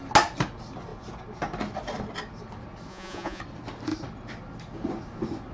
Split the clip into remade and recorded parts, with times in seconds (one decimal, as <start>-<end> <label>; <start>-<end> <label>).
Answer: 0.0-2.9 recorded; 2.9-3.4 remade; 3.4-5.5 recorded